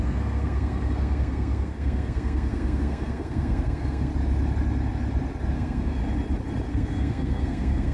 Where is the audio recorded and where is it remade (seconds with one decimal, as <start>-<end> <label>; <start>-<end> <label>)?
0.0-4.1 remade; 4.1-5.5 recorded; 5.5-6.0 remade; 6.0-6.7 recorded; 6.7-7.9 remade